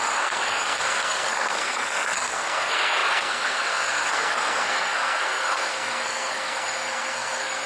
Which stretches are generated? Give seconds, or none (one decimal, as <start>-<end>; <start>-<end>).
0.0-7.7